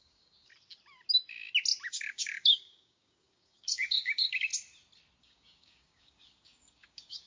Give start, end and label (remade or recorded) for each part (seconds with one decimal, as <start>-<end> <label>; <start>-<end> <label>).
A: 0.0-0.5 remade; 0.5-1.9 recorded; 1.9-4.5 remade; 4.5-5.2 recorded; 5.2-7.3 remade